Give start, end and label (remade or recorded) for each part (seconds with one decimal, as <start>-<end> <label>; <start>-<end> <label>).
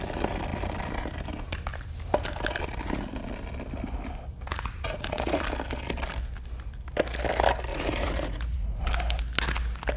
0.0-4.5 recorded; 4.5-5.4 remade; 5.4-7.7 recorded; 7.7-8.8 remade; 8.8-10.0 recorded